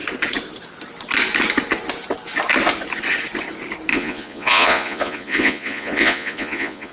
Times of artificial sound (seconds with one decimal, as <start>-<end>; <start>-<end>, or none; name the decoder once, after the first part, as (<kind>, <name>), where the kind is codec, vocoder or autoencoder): 3.9-6.9 (vocoder, Vocos)